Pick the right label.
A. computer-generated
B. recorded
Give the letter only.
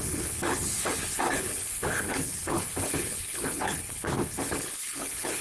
A